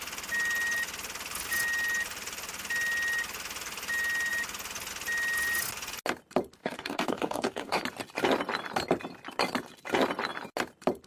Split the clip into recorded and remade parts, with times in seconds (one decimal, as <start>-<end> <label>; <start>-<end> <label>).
0.0-6.6 recorded; 6.6-7.8 remade; 7.8-11.1 recorded